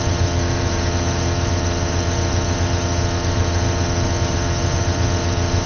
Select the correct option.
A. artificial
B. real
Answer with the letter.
A